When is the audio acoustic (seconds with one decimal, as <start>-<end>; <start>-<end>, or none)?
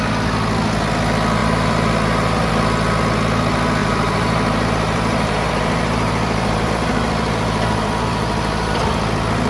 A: 0.0-1.4; 2.5-3.8; 8.8-9.5